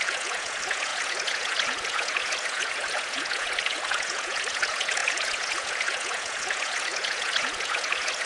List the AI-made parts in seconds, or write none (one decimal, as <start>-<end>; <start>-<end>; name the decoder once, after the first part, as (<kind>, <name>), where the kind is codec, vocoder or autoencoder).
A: 0.0-8.3 (vocoder, Vocos)